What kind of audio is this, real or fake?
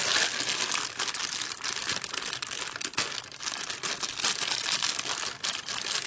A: real